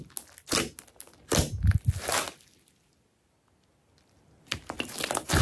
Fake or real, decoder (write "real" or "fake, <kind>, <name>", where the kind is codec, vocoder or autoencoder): real